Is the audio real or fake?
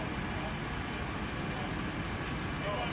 real